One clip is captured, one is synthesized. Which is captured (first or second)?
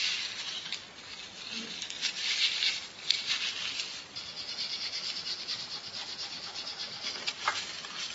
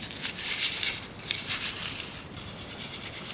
first